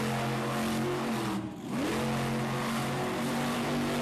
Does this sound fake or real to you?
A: real